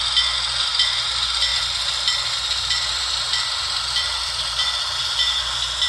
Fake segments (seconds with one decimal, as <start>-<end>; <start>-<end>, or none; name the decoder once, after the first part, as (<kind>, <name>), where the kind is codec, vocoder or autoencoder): 1.5-5.0 (vocoder, BigVGAN v2)